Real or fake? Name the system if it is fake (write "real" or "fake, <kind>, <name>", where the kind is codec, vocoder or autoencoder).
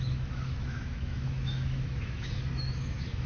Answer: fake, autoencoder, DAC-VAE